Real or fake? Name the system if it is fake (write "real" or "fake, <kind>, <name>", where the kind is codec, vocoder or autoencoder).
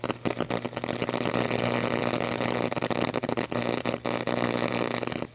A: real